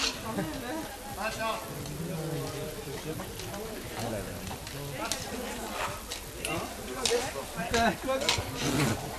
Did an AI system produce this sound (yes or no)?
no